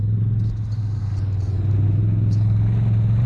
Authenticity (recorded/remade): recorded